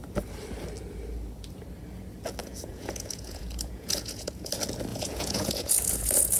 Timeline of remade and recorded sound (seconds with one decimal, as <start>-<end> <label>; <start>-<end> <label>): 0.0-2.5 recorded; 2.5-4.5 remade; 4.5-4.9 recorded; 4.9-6.4 remade